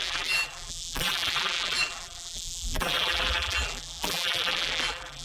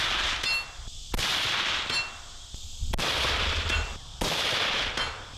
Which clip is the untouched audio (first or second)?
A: second